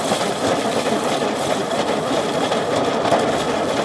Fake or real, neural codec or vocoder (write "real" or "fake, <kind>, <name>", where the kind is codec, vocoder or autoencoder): real